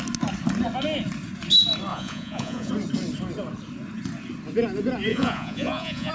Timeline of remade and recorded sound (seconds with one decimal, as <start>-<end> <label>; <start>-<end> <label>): 0.0-1.9 recorded; 1.9-2.7 remade; 2.7-5.1 recorded; 5.1-6.1 remade